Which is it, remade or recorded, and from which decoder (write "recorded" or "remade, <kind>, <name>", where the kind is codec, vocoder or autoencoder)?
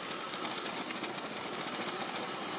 recorded